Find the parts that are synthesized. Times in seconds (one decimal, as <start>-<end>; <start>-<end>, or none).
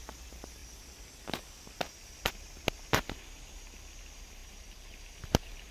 0.6-1.6; 4.4-5.0